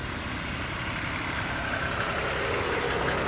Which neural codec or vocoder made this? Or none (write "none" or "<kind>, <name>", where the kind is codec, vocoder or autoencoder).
none